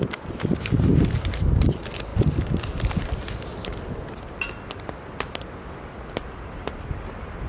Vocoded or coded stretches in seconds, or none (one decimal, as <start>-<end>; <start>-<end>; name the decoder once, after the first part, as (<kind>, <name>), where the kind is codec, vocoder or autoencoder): none